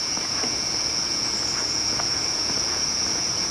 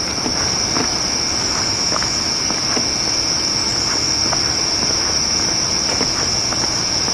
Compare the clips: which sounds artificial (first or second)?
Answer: first